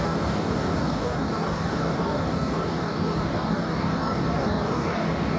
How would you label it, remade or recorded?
remade